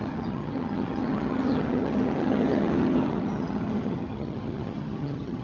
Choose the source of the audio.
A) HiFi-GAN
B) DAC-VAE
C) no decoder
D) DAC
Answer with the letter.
A